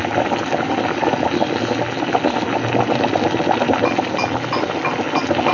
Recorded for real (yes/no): yes